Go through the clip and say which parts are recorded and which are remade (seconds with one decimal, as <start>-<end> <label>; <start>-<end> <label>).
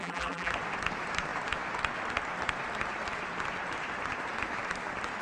0.0-0.5 remade; 0.5-5.2 recorded